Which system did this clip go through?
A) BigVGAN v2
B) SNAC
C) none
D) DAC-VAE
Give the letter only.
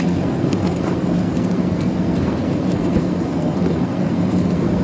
B